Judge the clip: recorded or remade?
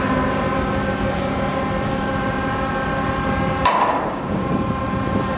remade